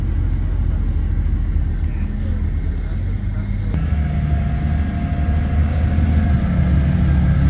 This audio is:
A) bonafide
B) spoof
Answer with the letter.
A